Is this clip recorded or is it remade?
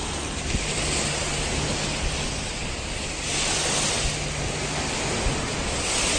recorded